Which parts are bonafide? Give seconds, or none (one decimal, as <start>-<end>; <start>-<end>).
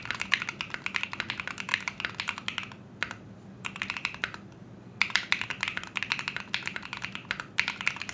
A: 0.0-8.1